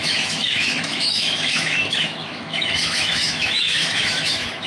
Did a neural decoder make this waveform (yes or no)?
yes